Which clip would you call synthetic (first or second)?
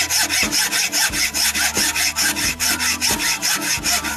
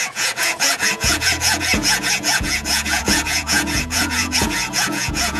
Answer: second